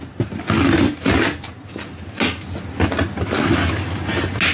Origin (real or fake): real